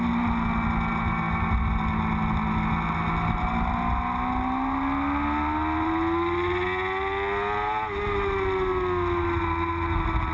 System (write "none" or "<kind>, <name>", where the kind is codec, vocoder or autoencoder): none